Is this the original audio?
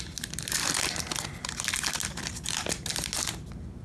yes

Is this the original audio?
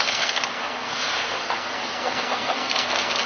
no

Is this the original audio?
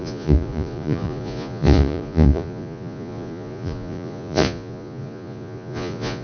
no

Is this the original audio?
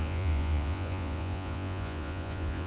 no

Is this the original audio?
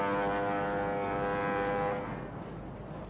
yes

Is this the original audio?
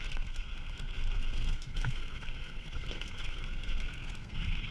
no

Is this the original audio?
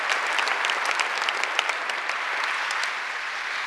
no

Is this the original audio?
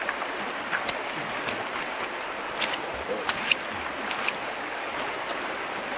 yes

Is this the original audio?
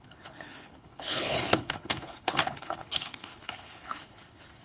no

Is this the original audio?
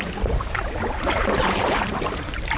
no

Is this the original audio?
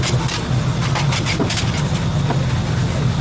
yes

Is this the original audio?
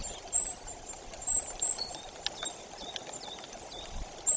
yes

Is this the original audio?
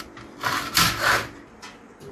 yes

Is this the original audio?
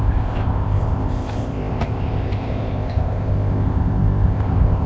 no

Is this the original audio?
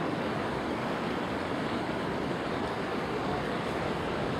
no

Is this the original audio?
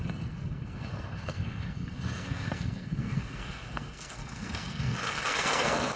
no